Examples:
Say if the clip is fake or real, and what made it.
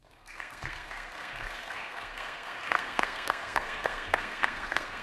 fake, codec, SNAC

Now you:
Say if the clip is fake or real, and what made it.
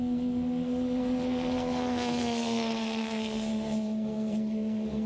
fake, codec, SNAC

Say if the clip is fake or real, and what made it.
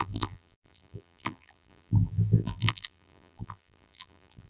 fake, vocoder, BigVGAN v2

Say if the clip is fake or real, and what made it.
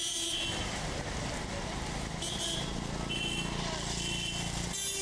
real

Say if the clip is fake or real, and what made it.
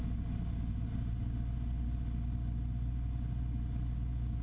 real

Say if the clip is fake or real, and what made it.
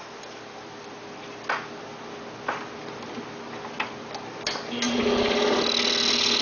real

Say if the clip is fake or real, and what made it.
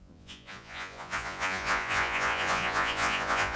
fake, vocoder, Vocos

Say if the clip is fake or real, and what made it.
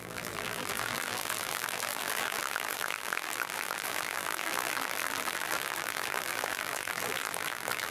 fake, vocoder, BigVGAN v2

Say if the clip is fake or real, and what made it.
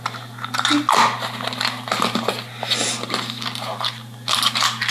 real